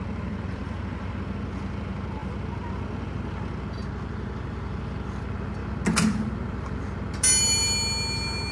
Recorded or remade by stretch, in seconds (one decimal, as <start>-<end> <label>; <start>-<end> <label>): 0.0-8.5 recorded